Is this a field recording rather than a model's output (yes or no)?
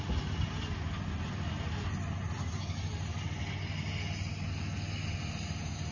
yes